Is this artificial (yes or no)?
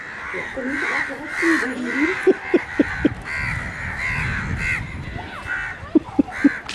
no